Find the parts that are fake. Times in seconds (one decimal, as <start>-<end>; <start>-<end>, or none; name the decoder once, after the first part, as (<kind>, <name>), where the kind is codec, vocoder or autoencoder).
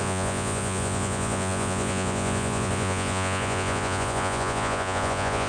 0.0-5.5 (vocoder, Vocos)